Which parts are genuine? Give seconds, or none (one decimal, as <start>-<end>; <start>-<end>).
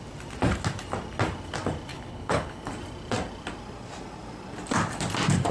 0.0-1.9; 2.7-5.5